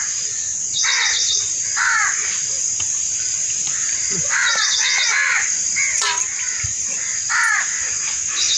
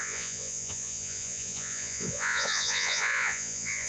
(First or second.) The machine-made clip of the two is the second